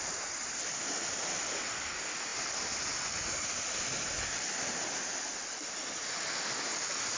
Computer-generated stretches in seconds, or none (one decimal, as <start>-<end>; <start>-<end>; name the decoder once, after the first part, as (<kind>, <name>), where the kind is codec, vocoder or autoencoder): none

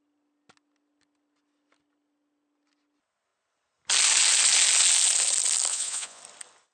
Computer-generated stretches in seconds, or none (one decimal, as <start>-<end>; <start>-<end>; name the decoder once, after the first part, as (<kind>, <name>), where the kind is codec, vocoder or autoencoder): 5.7-6.2 (vocoder, Vocos)

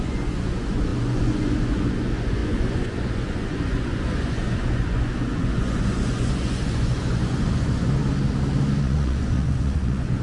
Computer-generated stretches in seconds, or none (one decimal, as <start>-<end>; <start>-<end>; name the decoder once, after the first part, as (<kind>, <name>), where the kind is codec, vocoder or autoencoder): 0.0-8.0 (vocoder, Vocos); 8.8-10.2

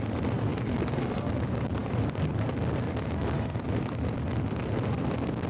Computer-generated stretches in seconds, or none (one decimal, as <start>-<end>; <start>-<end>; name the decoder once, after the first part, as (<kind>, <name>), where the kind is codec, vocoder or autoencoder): none